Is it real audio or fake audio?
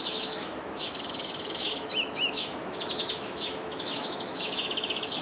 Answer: fake